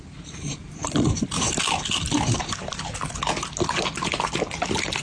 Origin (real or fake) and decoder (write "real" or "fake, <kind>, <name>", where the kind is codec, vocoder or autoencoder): real